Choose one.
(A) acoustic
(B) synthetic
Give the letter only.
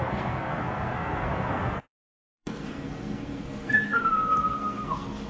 B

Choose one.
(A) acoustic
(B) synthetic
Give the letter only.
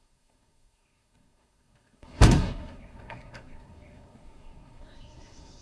B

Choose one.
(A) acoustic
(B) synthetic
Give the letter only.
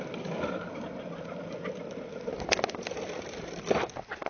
A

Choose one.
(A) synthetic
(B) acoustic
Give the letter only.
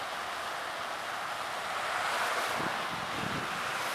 B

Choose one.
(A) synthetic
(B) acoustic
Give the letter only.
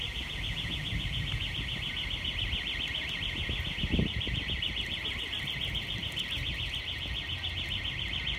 B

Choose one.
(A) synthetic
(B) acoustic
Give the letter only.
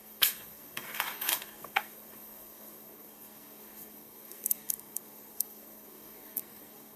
A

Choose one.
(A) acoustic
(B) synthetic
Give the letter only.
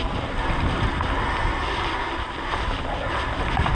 A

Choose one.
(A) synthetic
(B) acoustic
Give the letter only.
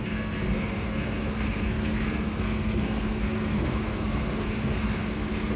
A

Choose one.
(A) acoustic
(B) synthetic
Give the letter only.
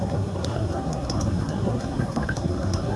B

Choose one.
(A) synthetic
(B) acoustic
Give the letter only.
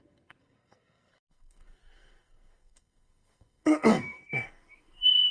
A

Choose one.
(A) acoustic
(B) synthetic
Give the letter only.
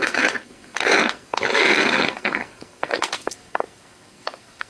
B